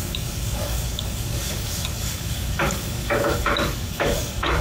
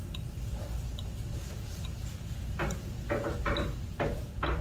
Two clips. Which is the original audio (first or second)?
second